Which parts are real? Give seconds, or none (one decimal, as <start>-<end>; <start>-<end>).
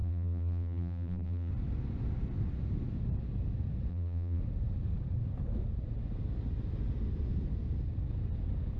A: 1.5-3.9; 4.4-8.8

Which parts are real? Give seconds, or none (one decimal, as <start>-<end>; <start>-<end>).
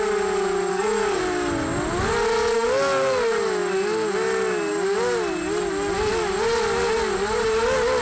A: 0.0-0.7; 1.2-8.0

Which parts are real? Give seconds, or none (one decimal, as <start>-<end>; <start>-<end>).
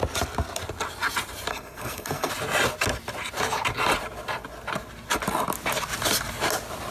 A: 0.0-1.5; 2.3-6.9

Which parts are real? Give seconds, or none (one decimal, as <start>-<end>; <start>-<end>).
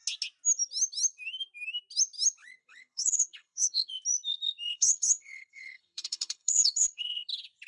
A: 0.0-2.6; 3.9-4.7; 7.3-7.7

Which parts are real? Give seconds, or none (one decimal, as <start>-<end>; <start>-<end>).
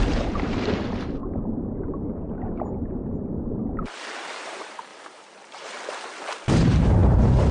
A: none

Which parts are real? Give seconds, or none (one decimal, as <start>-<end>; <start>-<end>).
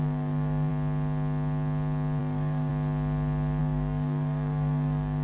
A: 0.7-2.2; 2.7-3.6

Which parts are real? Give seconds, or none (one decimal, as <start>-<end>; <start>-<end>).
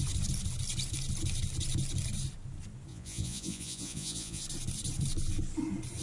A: 0.0-2.9; 4.4-6.0